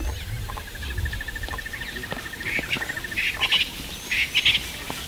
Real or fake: real